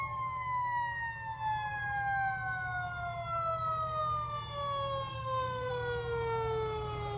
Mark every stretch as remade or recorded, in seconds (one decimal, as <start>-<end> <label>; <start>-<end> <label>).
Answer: 0.0-5.1 recorded; 5.1-5.7 remade; 5.7-7.2 recorded